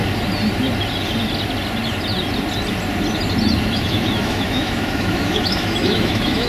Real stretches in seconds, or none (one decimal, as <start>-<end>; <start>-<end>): 0.0-3.6